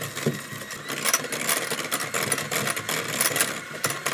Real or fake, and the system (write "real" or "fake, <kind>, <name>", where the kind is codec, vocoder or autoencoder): real